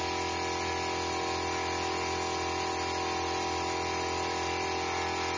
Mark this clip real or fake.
real